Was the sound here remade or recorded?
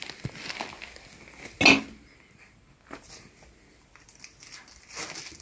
recorded